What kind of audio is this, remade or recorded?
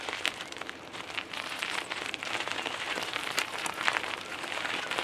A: remade